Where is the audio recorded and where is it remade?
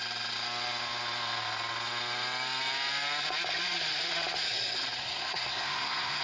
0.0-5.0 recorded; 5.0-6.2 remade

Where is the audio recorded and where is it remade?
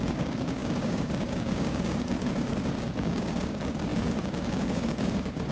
0.0-5.5 remade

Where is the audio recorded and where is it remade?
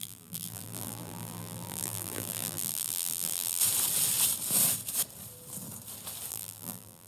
0.0-3.6 remade; 3.6-6.3 recorded; 6.3-7.1 remade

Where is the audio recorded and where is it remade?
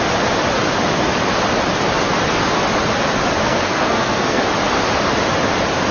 0.0-3.4 recorded; 3.4-4.4 remade; 4.4-5.9 recorded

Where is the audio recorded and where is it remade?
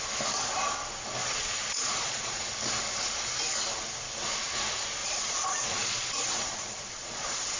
0.0-1.2 recorded; 1.2-2.5 remade; 2.5-5.0 recorded; 5.0-7.6 remade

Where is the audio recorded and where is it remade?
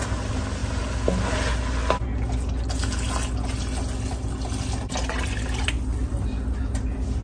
0.0-7.2 recorded